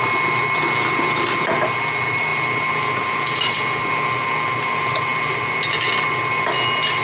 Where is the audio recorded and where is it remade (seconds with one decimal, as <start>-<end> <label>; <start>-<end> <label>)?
0.0-7.0 recorded